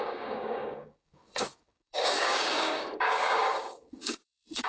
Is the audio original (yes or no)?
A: no